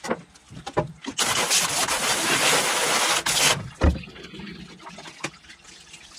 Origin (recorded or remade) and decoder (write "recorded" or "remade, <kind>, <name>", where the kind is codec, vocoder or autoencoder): recorded